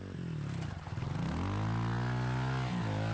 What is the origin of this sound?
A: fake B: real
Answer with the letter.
B